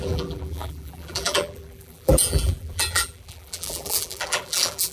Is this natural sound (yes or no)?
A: no